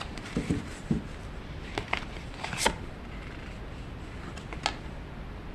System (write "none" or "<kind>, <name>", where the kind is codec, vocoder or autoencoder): none